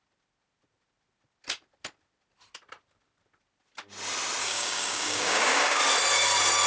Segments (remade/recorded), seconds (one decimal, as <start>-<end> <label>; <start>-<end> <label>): 0.0-4.4 recorded; 4.4-5.8 remade; 5.8-6.7 recorded